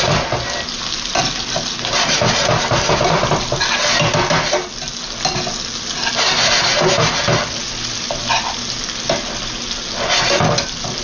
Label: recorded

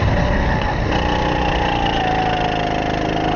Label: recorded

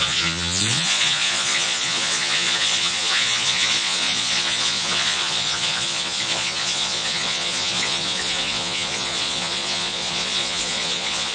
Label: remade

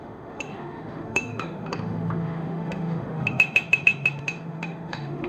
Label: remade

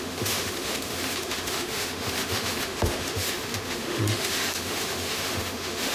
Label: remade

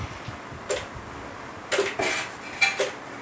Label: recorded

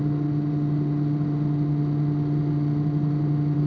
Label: recorded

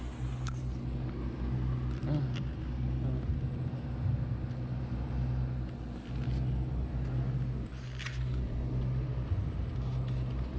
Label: recorded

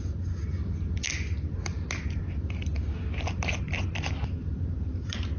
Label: recorded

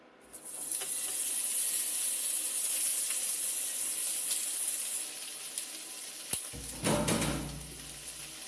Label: recorded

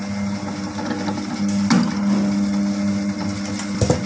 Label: recorded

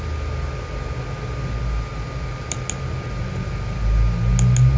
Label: recorded